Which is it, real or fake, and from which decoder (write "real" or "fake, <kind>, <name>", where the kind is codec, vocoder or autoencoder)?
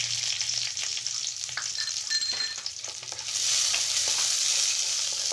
real